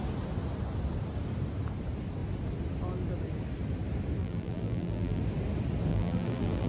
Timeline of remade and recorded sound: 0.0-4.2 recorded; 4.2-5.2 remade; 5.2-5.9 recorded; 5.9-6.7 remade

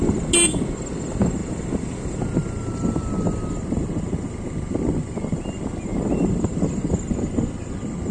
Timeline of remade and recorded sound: 0.0-8.1 recorded

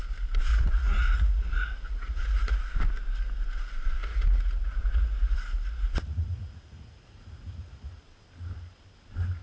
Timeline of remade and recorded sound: 0.0-0.5 recorded; 0.5-2.6 remade; 2.6-4.1 recorded; 4.1-8.0 remade; 8.0-9.4 recorded